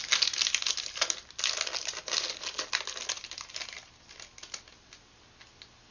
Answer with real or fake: real